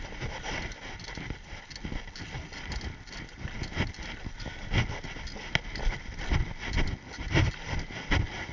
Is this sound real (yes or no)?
yes